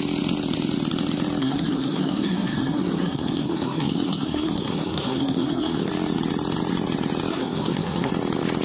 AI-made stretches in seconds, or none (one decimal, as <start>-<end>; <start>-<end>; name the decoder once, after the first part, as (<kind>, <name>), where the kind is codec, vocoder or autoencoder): 1.4-5.9 (codec, SNAC); 7.3-8.1